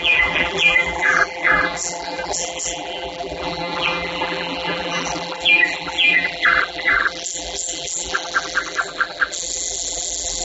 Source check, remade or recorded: remade